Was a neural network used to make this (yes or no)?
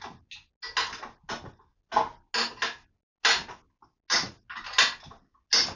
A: no